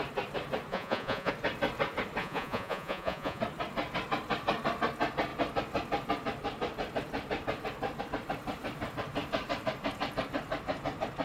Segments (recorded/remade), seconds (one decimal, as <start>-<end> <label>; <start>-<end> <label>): 0.0-0.7 recorded; 0.7-1.3 remade; 1.3-2.2 recorded; 2.2-3.4 remade; 3.4-11.2 recorded

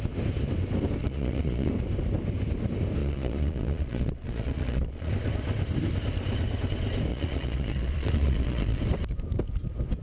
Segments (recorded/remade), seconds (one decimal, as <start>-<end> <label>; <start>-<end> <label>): 0.0-1.0 recorded; 1.0-1.7 remade; 1.7-3.0 recorded; 3.0-5.1 remade; 5.1-7.1 recorded; 7.1-8.8 remade; 8.8-10.0 recorded

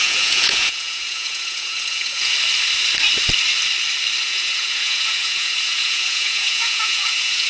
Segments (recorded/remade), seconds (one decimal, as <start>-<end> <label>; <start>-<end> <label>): 0.0-2.3 remade; 2.3-4.2 recorded; 4.2-7.5 remade